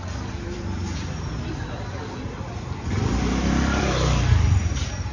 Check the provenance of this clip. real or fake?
fake